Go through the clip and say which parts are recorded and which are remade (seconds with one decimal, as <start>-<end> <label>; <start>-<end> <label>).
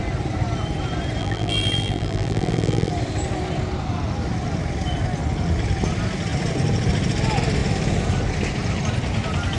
0.0-1.2 recorded; 1.2-2.9 remade; 2.9-9.6 recorded